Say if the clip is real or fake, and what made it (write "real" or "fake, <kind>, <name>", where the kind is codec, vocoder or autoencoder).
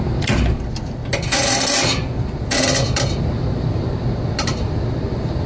real